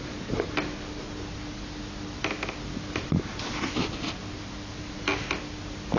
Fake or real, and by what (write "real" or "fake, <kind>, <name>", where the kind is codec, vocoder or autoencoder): real